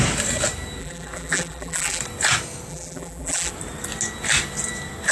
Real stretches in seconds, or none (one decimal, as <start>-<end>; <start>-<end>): 0.0-0.8; 2.0-2.7; 3.5-5.1